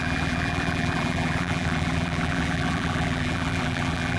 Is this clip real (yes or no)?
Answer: no